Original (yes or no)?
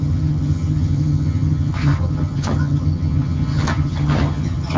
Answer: no